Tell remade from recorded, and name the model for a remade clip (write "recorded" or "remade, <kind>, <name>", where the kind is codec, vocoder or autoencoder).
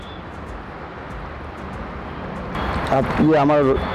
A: recorded